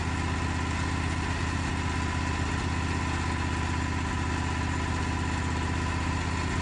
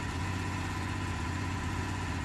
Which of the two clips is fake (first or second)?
second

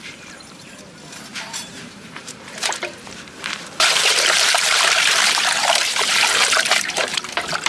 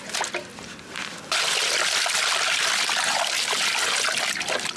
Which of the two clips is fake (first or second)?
first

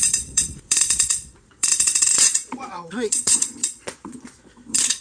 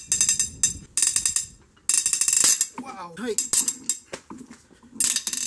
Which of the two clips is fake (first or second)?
first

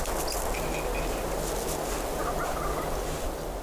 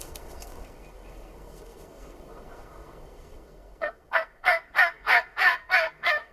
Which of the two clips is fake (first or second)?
second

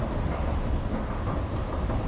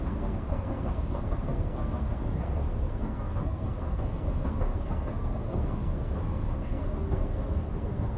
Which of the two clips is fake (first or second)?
second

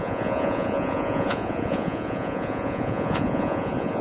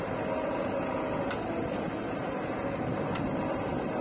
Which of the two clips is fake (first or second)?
first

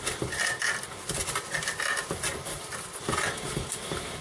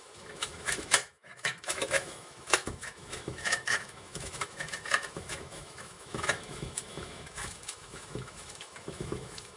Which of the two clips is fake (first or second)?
second